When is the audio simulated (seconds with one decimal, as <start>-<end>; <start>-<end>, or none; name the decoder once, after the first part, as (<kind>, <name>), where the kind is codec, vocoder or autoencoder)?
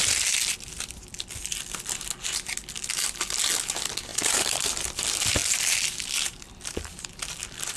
1.1-1.6 (vocoder, BigVGAN v2); 4.1-5.0; 5.4-7.2